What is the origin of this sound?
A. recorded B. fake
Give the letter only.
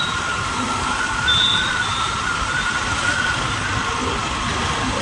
A